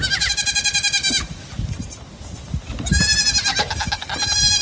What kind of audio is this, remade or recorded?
recorded